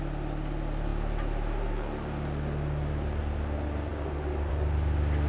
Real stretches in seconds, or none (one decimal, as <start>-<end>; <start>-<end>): 0.0-5.3